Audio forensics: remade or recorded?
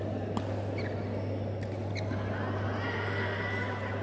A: recorded